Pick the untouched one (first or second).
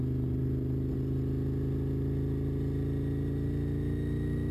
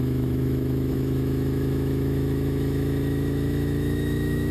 first